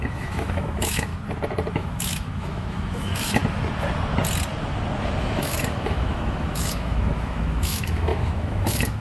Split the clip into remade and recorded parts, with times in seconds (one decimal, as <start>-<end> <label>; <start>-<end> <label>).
0.0-1.1 remade; 1.1-1.7 recorded; 1.7-3.4 remade; 3.4-5.2 recorded; 5.2-9.0 remade